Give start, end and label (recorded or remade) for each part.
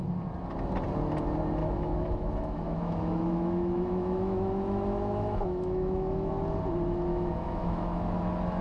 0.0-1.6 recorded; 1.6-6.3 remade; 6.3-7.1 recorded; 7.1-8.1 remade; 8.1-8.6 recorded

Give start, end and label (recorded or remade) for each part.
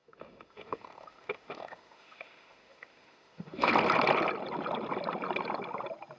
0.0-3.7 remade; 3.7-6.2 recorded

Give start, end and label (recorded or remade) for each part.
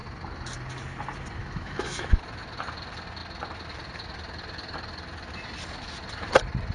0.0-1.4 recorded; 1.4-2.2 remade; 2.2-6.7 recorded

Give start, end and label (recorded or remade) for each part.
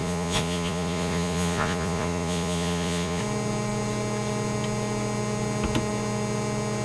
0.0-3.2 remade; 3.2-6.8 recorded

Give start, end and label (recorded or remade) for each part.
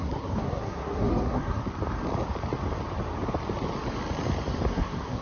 0.0-1.6 remade; 1.6-4.7 recorded; 4.7-5.2 remade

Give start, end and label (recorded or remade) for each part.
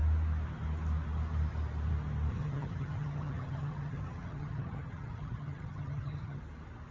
0.0-2.3 recorded; 2.3-6.4 remade; 6.4-6.9 recorded